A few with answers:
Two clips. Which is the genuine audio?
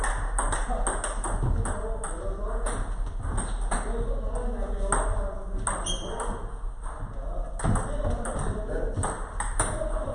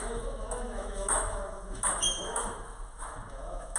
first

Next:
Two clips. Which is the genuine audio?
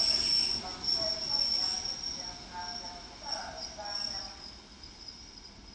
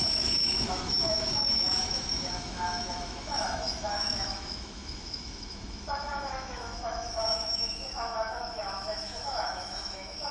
first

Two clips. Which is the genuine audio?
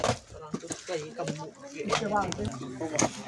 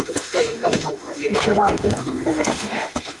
first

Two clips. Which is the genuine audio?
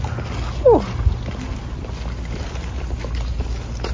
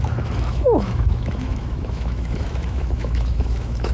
first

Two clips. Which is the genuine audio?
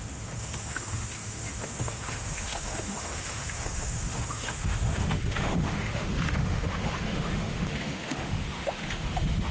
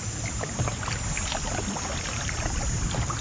second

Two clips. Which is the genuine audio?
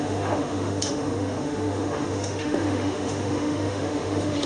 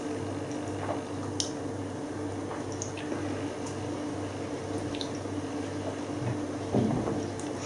second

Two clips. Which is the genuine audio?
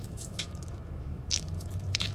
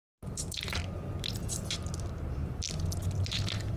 second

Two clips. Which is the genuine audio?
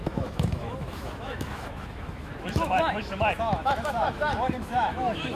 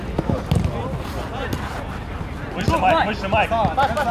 second